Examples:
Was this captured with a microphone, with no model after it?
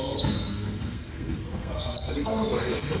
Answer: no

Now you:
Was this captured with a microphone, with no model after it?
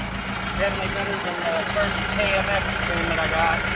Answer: yes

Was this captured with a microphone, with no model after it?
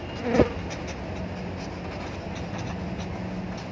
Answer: yes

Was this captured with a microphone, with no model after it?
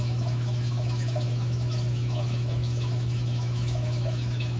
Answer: no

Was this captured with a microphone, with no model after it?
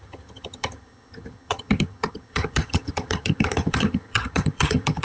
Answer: no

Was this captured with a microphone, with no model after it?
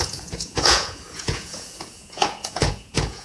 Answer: no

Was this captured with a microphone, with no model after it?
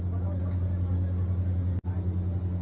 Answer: yes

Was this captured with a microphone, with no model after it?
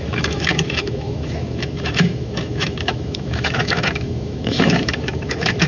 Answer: no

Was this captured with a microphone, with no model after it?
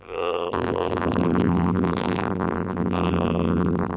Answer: no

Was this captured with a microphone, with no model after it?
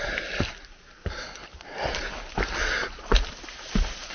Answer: yes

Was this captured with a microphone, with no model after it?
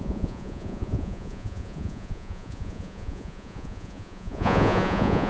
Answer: no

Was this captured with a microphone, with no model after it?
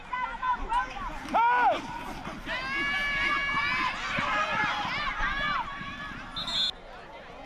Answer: yes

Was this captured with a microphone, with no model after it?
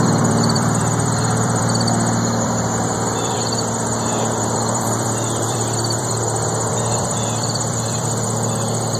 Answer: no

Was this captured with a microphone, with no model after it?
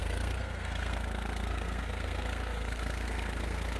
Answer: no